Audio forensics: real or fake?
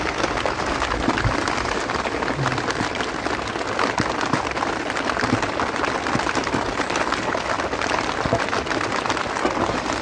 real